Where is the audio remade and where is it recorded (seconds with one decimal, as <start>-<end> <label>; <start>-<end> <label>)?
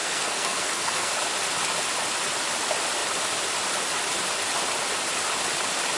0.0-1.1 remade; 1.1-6.0 recorded